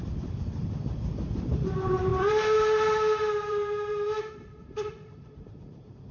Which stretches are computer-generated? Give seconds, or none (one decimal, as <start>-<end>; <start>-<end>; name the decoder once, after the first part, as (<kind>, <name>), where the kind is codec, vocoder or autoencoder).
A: 0.0-6.1 (vocoder, BigVGAN v2)